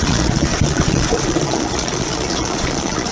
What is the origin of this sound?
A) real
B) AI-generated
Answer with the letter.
B